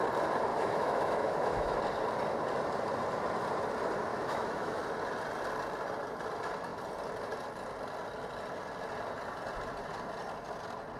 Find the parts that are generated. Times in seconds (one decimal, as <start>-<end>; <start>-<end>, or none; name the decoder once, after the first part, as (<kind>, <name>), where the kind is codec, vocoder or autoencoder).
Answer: 0.5-1.8 (autoencoder, DAC-VAE); 4.1-4.8

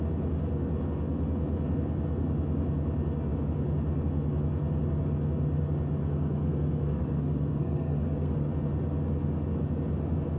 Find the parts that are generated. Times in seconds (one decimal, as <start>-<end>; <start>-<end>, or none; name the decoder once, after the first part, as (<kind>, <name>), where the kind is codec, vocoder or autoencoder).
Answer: 6.0-8.5 (codec, SNAC)

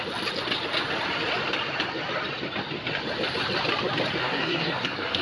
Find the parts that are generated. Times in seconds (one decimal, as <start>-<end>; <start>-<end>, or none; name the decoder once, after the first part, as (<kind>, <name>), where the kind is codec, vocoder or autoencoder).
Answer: 4.2-5.2 (codec, SNAC)

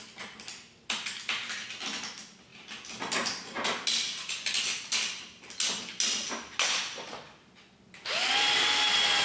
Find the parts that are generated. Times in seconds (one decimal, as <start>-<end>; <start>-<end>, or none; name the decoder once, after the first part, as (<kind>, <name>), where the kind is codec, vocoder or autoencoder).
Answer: none